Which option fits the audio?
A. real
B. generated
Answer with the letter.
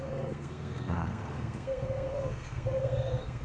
B